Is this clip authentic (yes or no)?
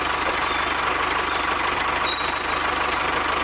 yes